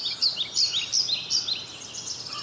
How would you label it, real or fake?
real